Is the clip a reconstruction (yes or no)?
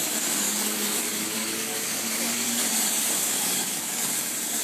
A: yes